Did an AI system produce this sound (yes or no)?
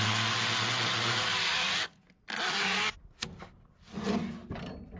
no